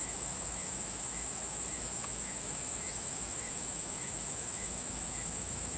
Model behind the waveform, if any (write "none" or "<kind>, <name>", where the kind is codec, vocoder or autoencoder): autoencoder, DAC-VAE